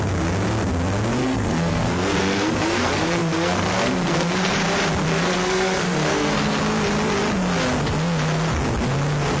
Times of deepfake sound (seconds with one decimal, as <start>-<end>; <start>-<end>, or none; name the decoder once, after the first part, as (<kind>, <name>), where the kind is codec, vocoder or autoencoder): 1.2-4.5 (codec, SNAC); 5.1-6.6